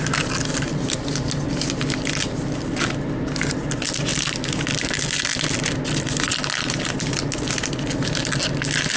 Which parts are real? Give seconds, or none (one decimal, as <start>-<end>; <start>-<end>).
0.0-9.0